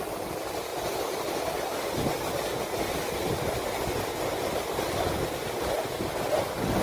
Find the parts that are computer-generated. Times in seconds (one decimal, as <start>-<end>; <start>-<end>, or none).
none